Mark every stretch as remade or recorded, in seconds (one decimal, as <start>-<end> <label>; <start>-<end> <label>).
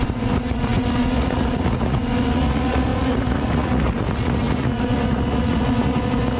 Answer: 0.0-6.4 remade